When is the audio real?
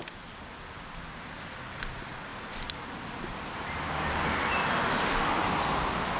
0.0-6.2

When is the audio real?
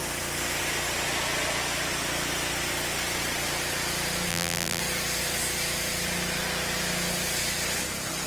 0.0-4.3; 4.8-8.3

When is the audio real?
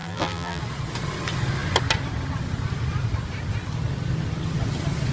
0.6-5.1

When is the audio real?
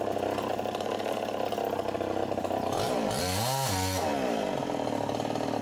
0.0-0.5; 1.1-5.6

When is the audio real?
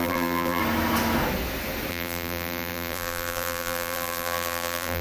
0.6-1.9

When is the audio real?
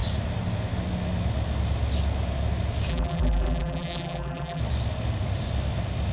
0.0-2.9; 4.6-6.1